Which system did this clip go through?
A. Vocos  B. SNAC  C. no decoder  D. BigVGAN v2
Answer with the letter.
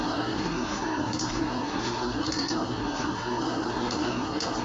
B